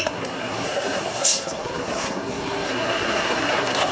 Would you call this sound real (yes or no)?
no